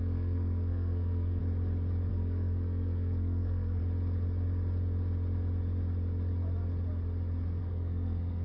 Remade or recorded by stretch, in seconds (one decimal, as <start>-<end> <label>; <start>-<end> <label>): 0.0-1.4 remade; 1.4-2.1 recorded; 2.1-3.8 remade; 3.8-7.6 recorded; 7.6-8.4 remade

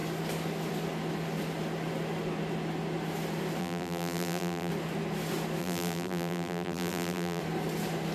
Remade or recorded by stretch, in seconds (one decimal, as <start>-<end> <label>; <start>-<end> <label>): 0.0-3.6 recorded; 3.6-4.7 remade; 4.7-5.6 recorded; 5.6-7.4 remade; 7.4-8.1 recorded

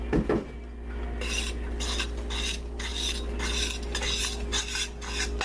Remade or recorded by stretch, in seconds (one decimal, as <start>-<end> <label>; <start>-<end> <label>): 0.0-5.4 recorded

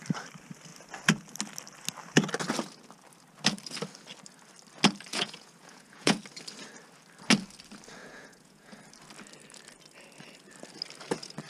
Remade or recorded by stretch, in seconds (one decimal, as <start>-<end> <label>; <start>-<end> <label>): 0.0-5.1 recorded; 5.1-6.2 remade; 6.2-8.0 recorded; 8.0-8.8 remade; 8.8-11.5 recorded

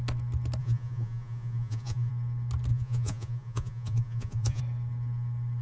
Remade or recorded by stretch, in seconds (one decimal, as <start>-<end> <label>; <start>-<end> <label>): 0.0-0.6 recorded; 0.6-2.1 remade; 2.1-2.7 recorded; 2.7-4.6 remade; 4.6-5.6 recorded

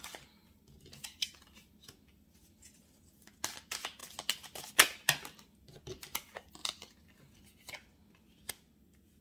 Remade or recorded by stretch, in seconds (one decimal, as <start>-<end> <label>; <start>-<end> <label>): 0.0-9.2 recorded

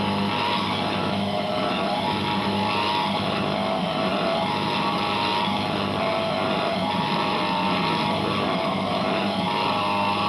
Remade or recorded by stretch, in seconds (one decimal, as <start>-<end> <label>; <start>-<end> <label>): 0.0-1.0 recorded; 1.0-1.6 remade; 1.6-10.3 recorded